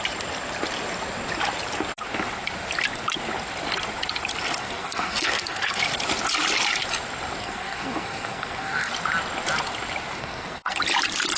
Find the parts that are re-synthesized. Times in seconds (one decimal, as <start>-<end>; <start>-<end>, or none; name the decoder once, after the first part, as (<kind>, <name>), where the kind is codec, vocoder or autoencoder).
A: 4.6-5.8 (codec, SNAC); 7.4-8.9; 10.2-10.8